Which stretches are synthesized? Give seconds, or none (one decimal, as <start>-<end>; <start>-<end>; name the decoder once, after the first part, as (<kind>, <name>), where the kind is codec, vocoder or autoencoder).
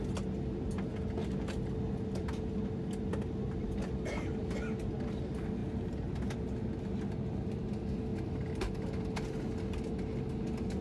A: none